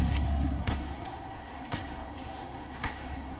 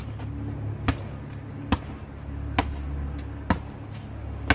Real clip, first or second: second